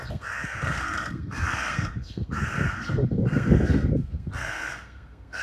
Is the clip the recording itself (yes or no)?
no